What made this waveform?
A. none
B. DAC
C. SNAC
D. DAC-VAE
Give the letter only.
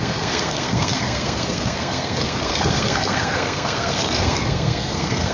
C